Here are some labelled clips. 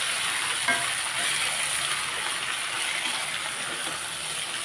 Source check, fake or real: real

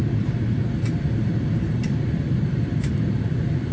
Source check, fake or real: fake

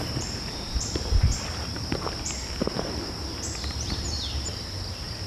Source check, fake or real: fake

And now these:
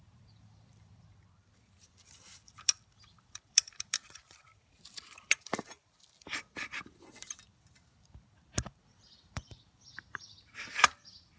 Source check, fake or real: fake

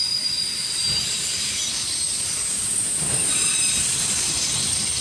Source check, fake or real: fake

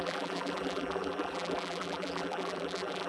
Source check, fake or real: fake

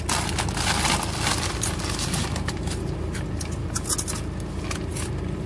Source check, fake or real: real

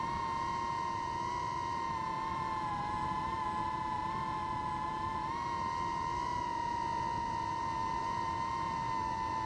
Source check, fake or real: fake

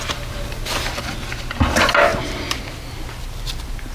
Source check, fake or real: real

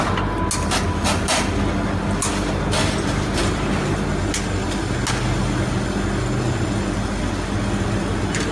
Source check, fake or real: real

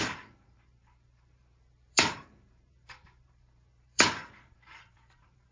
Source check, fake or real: fake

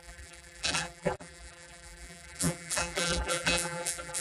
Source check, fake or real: fake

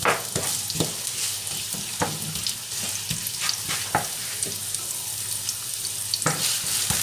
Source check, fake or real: real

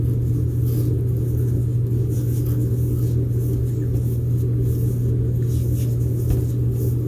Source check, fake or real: real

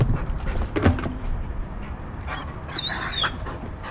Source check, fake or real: fake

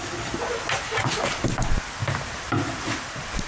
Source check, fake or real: real